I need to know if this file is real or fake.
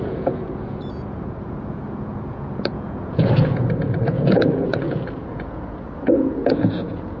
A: fake